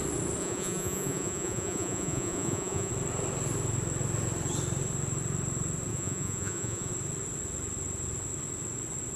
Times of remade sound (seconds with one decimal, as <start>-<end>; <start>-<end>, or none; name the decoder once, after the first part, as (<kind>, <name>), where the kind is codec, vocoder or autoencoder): 0.4-2.9 (vocoder, Vocos); 5.9-6.9